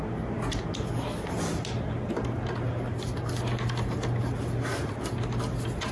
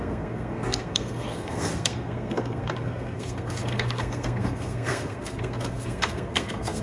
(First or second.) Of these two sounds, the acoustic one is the first